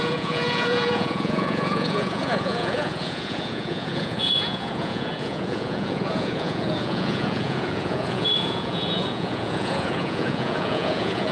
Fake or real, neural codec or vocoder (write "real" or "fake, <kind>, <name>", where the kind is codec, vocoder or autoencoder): fake, vocoder, Vocos